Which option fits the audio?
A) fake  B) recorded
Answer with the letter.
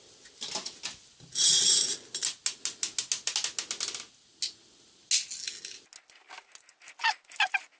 B